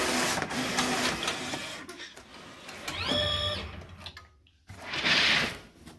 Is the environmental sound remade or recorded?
recorded